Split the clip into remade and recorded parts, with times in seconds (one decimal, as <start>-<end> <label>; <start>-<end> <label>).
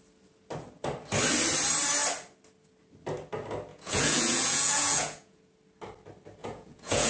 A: 0.0-3.7 recorded; 3.7-5.4 remade; 5.4-6.4 recorded; 6.4-7.1 remade